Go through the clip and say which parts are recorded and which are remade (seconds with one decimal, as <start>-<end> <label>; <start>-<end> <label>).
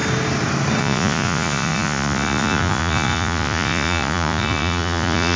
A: 0.0-0.8 recorded; 0.8-5.4 remade